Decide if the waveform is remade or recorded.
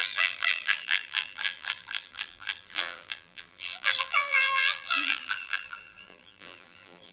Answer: remade